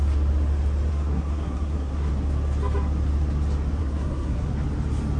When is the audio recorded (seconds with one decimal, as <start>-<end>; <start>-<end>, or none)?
0.0-0.9; 2.1-3.8; 4.5-5.2